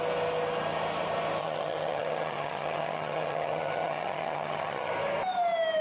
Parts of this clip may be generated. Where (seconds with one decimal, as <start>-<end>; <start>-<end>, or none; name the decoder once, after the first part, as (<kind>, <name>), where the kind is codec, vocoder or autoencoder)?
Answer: 1.4-4.9 (vocoder, HiFi-GAN)